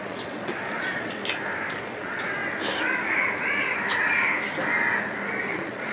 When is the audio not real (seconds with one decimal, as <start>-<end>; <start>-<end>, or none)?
0.0-1.2; 1.7-2.4; 5.5-5.9